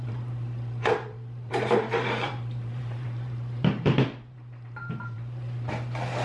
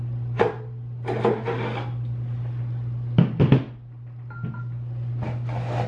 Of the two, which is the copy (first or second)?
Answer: first